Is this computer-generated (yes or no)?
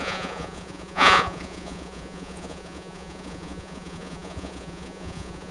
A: yes